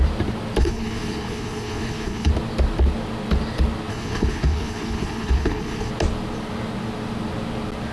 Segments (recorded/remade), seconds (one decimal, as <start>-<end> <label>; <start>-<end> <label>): 0.0-0.6 recorded; 0.6-2.3 remade; 2.3-3.9 recorded; 3.9-5.9 remade; 5.9-7.9 recorded